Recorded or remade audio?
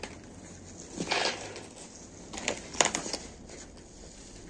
recorded